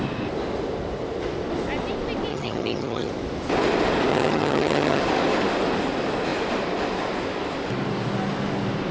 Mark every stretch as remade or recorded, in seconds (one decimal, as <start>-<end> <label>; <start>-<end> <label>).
0.0-2.3 recorded; 2.3-3.1 remade; 3.1-4.1 recorded; 4.1-5.0 remade; 5.0-8.9 recorded